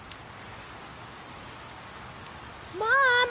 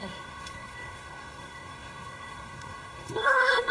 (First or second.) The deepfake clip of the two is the second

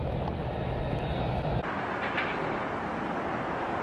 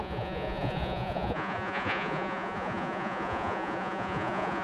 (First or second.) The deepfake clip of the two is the second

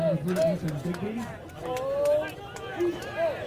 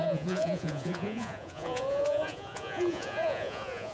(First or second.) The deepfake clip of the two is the second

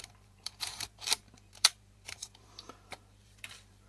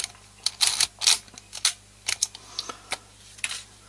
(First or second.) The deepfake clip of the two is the first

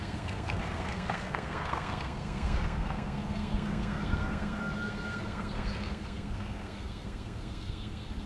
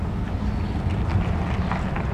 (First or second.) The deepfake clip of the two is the first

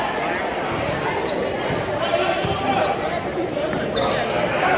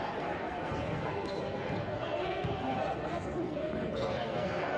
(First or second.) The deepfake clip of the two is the second